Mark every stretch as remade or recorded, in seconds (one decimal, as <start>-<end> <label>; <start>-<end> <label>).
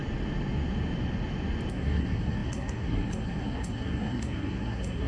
0.0-1.7 recorded; 1.7-5.1 remade